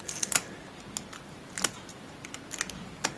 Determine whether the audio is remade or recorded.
recorded